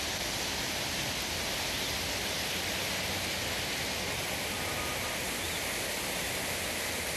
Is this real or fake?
real